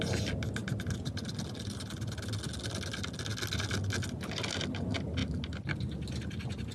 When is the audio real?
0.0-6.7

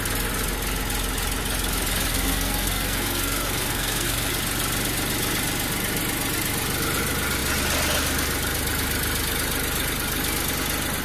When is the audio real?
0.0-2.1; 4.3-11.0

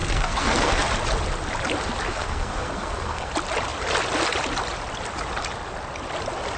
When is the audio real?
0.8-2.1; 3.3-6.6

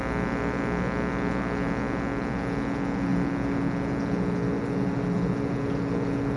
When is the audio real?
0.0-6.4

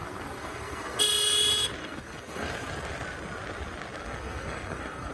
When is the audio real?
1.0-1.8; 2.5-4.0

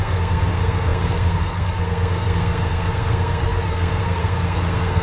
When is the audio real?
none

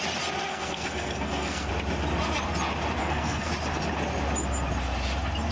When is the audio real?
0.0-0.5; 1.7-3.0; 3.5-5.5

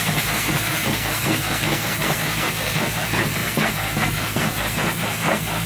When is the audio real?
none